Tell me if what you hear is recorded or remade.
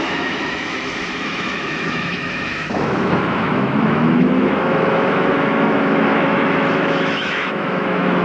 remade